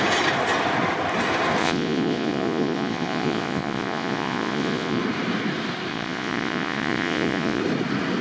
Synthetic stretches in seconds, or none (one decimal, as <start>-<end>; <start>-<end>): 1.6-5.0; 5.9-7.6